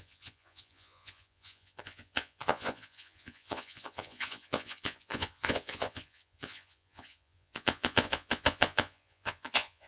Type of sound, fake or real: fake